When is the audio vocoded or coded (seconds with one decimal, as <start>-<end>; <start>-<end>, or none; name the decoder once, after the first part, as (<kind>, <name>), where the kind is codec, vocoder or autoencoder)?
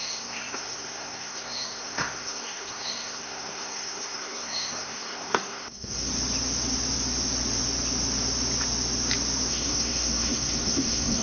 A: 0.0-6.1 (codec, SNAC); 9.5-11.2